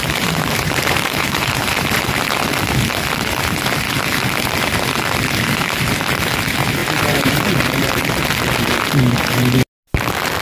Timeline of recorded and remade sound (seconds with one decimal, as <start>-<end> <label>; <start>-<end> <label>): 0.0-2.1 remade; 2.1-6.8 recorded; 6.8-7.5 remade; 7.5-10.4 recorded